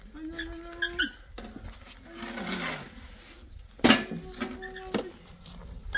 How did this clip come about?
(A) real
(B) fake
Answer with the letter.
A